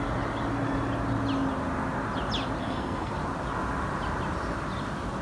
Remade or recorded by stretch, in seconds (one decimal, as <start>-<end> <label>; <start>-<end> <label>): 0.0-2.6 recorded; 2.6-3.1 remade; 3.1-5.2 recorded